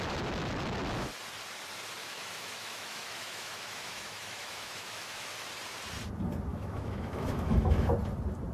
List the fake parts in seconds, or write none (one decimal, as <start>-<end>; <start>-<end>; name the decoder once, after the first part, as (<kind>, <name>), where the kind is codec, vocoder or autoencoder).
2.0-5.3 (autoencoder, DAC-VAE); 6.5-7.9